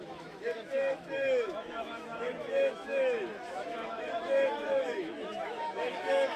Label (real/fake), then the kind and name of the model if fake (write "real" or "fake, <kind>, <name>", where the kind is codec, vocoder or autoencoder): fake, autoencoder, DAC-VAE